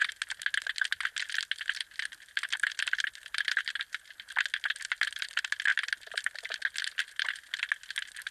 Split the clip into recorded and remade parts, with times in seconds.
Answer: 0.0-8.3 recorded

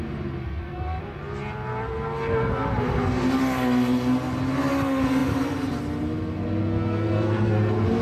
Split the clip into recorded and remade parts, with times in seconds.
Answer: 0.0-0.4 recorded; 0.4-1.0 remade; 1.0-6.6 recorded; 6.6-7.6 remade; 7.6-8.0 recorded